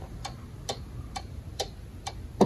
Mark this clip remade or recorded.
recorded